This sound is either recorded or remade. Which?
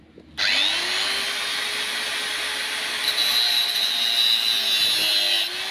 recorded